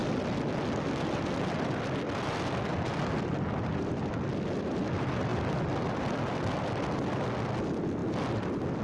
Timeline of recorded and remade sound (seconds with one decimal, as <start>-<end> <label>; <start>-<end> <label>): 0.0-8.8 recorded